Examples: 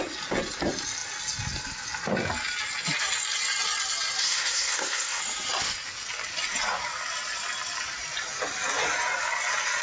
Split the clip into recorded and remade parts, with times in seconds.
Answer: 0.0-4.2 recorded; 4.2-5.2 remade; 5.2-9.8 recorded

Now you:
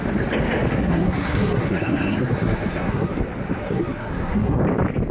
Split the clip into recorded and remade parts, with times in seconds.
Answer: 0.0-0.7 recorded; 0.7-3.2 remade; 3.2-3.6 recorded; 3.6-4.6 remade; 4.6-5.1 recorded

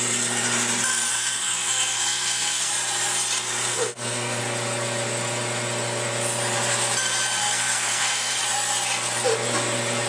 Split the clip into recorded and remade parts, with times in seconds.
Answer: 0.0-1.1 recorded; 1.1-2.7 remade; 2.7-3.7 recorded; 3.7-4.4 remade; 4.4-7.4 recorded; 7.4-8.4 remade; 8.4-10.1 recorded

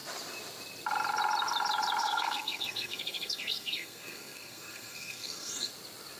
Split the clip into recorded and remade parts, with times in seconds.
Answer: 0.0-2.0 recorded; 2.0-5.7 remade; 5.7-6.2 recorded